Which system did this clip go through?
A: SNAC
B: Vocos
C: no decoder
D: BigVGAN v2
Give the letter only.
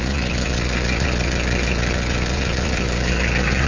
B